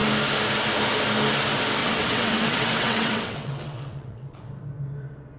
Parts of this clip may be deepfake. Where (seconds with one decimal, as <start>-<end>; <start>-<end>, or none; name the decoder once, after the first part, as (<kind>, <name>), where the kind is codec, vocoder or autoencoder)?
1.8-4.4 (vocoder, WaveNeXt)